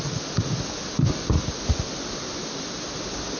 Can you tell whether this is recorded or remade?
recorded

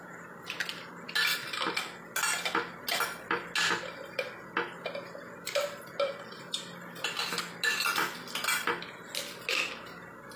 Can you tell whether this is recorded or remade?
recorded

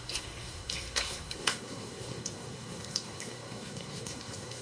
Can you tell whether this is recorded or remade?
remade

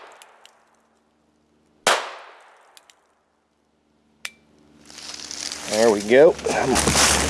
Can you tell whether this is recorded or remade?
recorded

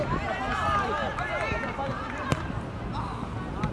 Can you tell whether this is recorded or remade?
recorded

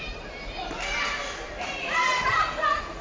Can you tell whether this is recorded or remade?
recorded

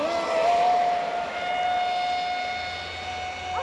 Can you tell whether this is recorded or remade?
recorded